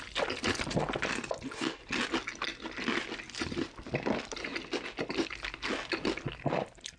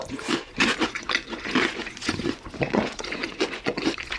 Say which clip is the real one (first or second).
first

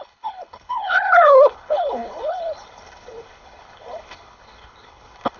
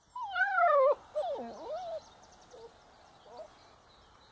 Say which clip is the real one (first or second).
second